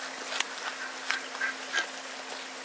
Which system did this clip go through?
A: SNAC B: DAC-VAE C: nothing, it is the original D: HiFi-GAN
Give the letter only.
C